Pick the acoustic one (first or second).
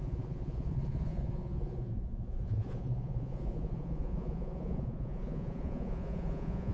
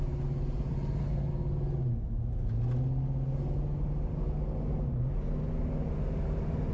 second